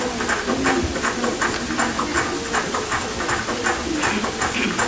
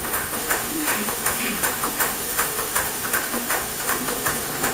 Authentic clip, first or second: first